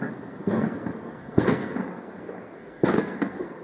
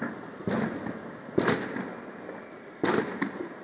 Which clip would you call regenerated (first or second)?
first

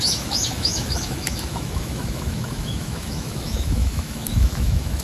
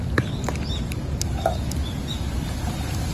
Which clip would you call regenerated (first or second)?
first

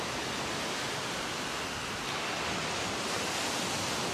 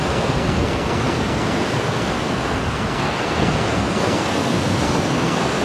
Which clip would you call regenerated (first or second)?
second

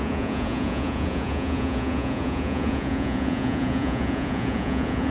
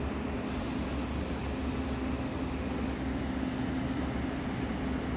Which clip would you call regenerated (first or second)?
first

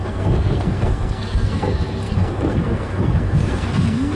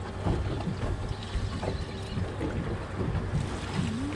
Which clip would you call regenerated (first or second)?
first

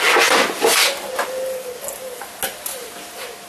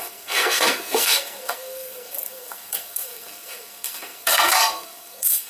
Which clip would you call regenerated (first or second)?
second